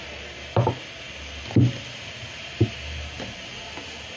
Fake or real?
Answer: real